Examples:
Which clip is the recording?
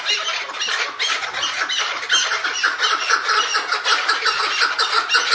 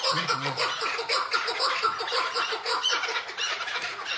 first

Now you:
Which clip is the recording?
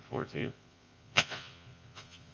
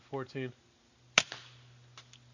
second